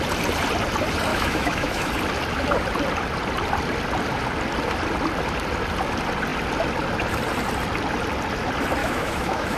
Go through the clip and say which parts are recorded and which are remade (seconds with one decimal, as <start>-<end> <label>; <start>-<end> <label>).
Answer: 0.0-1.1 recorded; 1.1-1.9 remade; 1.9-8.8 recorded; 8.8-9.6 remade